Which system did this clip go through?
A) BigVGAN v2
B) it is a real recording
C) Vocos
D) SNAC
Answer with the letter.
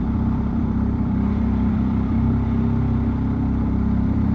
A